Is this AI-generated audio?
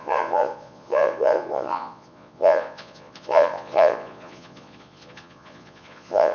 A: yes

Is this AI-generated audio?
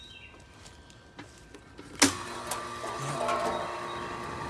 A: no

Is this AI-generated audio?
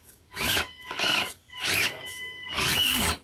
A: yes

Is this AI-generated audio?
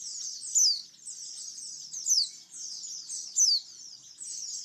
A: no